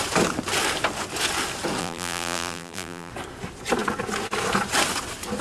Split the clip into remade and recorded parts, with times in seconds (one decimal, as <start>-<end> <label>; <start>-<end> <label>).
0.0-1.8 recorded; 1.8-3.1 remade; 3.1-5.4 recorded